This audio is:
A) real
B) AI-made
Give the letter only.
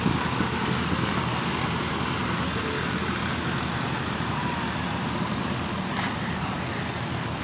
A